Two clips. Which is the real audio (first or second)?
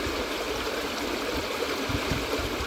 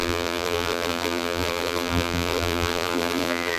first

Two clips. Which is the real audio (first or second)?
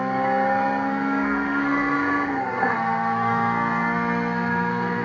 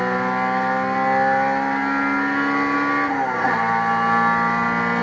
second